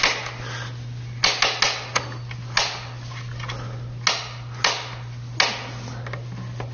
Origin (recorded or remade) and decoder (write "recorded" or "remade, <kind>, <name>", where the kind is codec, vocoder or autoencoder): recorded